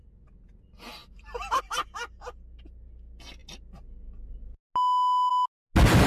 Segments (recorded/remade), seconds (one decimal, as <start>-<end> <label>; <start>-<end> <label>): 0.0-6.1 recorded